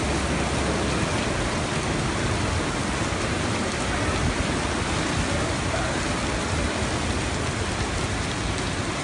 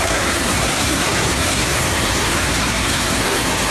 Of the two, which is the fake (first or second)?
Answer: second